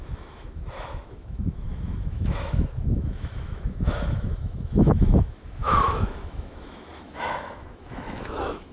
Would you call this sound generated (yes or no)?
yes